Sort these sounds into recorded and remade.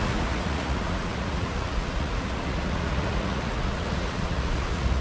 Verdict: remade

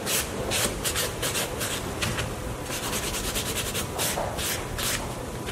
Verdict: remade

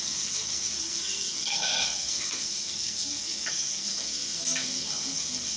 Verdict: remade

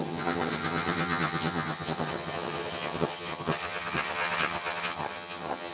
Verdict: remade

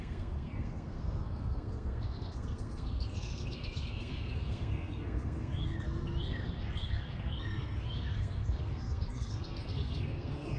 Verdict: remade